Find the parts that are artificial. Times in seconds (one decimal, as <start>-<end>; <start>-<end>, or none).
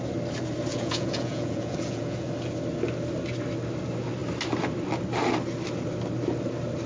0.7-2.3